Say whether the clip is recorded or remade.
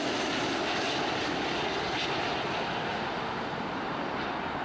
recorded